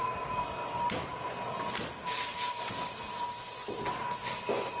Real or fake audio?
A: real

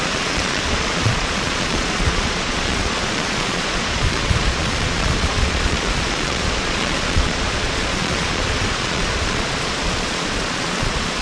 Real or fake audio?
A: fake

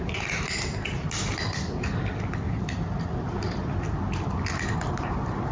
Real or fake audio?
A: real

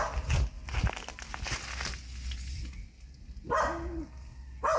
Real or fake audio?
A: real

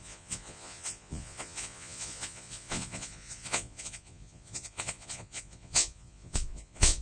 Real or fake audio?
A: fake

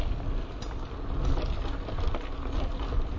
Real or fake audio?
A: real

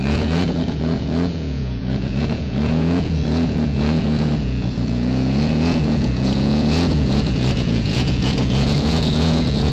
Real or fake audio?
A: fake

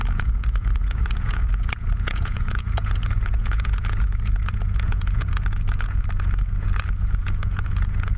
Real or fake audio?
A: fake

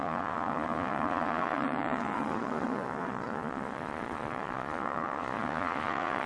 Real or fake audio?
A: fake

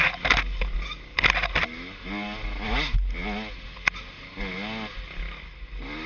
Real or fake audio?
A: real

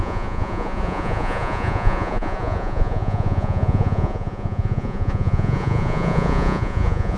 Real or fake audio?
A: fake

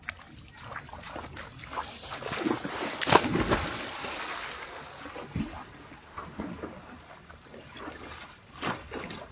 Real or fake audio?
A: real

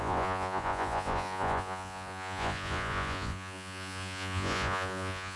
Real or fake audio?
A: fake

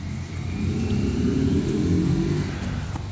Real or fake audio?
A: real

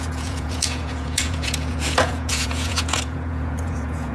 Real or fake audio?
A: fake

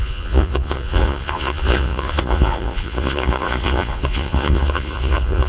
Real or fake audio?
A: fake